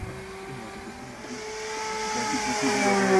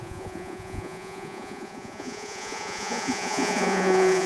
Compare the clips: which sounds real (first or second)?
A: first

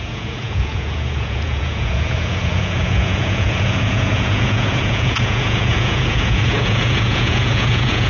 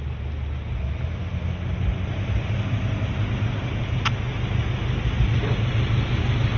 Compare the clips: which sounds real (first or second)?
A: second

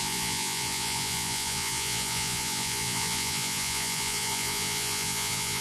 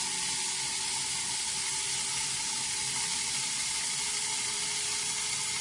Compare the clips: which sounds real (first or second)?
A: second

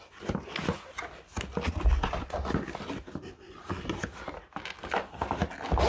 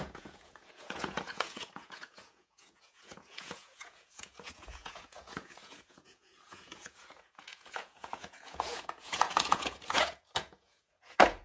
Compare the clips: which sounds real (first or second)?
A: first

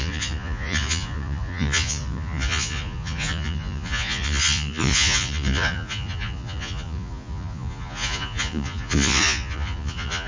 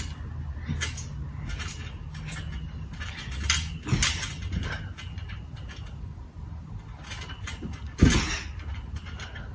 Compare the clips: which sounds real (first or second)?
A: second